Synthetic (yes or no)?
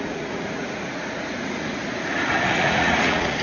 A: yes